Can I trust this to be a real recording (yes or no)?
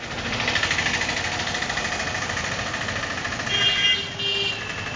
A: yes